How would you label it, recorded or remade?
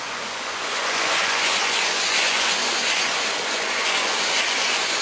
remade